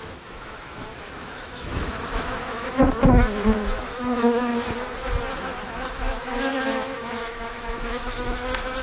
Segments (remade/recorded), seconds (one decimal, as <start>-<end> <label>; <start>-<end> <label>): 0.0-4.5 remade; 4.5-5.4 recorded; 5.4-8.8 remade